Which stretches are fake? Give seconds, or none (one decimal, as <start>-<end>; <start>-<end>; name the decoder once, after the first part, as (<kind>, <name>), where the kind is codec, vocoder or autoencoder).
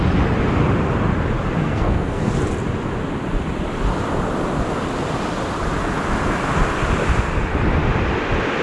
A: 1.6-2.3 (codec, SNAC)